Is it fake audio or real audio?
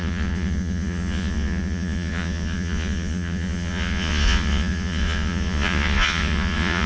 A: fake